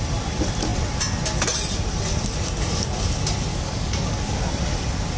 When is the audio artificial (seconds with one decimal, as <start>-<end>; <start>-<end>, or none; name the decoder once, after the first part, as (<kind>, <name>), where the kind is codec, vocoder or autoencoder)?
3.5-4.4 (codec, DAC)